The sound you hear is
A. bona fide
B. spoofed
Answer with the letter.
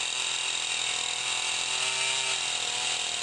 A